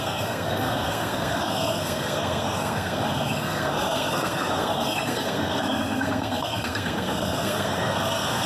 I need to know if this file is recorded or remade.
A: remade